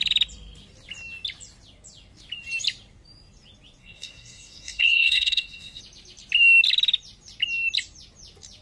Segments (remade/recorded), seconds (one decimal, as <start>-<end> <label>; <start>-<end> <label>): 0.0-3.8 recorded; 3.8-5.8 remade; 5.8-8.6 recorded